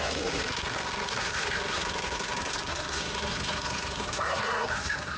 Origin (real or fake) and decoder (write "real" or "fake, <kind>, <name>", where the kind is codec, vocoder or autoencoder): fake, codec, SNAC